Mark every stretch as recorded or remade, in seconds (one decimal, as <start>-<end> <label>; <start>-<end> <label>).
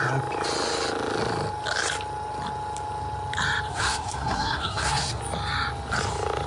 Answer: 0.0-3.7 recorded; 3.7-5.2 remade; 5.2-6.5 recorded